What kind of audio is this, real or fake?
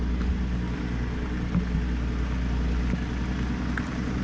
real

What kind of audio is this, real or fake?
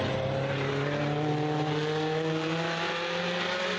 real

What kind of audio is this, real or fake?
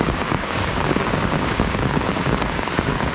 fake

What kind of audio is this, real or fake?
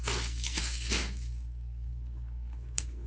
fake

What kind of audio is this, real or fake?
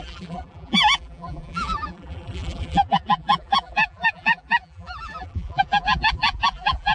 fake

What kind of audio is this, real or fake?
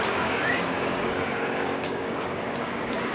fake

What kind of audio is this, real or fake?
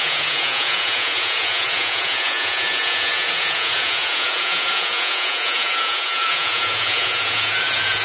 fake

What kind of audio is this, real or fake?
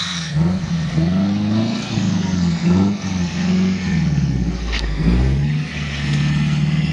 fake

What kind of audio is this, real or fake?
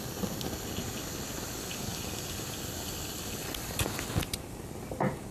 real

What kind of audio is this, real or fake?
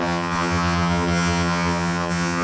fake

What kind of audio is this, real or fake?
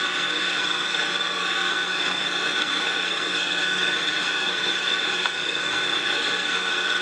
fake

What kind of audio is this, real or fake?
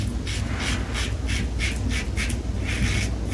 real